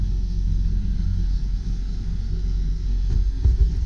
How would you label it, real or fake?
fake